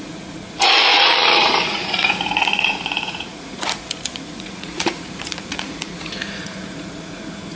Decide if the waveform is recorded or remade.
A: remade